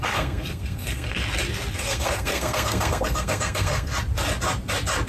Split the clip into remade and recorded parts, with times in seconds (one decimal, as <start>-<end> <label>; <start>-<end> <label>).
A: 0.0-1.2 remade; 1.2-1.7 recorded; 1.7-3.9 remade; 3.9-5.1 recorded